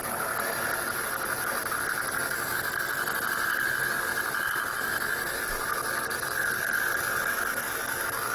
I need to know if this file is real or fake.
real